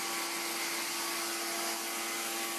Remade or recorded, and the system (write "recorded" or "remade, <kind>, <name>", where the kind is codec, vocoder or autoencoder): recorded